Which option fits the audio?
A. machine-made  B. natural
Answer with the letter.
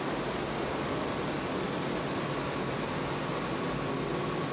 B